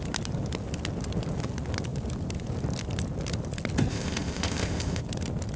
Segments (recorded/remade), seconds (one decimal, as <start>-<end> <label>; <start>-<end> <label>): 0.0-3.9 recorded; 3.9-5.0 remade; 5.0-5.6 recorded